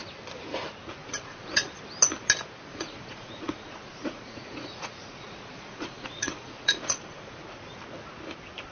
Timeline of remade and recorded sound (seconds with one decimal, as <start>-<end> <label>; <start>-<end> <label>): 0.0-1.0 recorded; 1.0-1.7 remade; 1.7-2.7 recorded; 2.7-7.8 remade; 7.8-8.7 recorded